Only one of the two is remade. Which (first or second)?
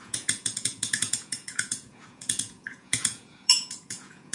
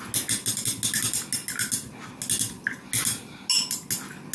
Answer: first